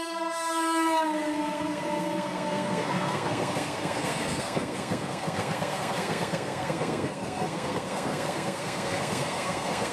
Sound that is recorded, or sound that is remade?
remade